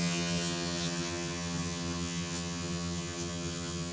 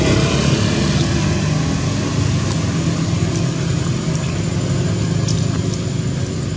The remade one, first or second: first